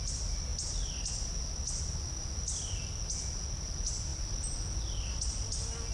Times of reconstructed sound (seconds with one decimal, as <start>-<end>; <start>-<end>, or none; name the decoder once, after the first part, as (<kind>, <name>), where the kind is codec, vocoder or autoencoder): none